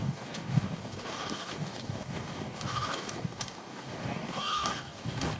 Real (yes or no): no